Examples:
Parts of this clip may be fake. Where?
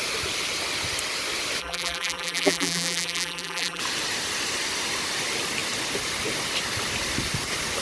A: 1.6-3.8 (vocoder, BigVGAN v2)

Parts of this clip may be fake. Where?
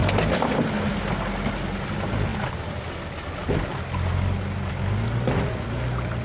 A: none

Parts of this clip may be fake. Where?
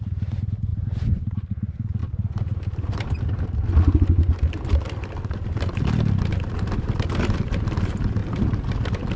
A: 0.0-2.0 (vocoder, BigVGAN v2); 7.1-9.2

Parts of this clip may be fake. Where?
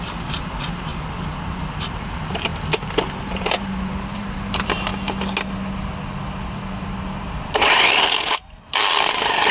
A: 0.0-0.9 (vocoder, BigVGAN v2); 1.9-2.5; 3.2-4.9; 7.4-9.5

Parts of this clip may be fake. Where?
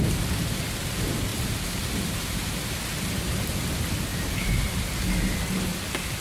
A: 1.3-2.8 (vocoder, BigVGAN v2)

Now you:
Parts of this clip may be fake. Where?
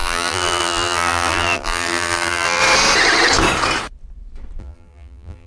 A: 0.0-2.6 (vocoder, BigVGAN v2); 4.6-5.5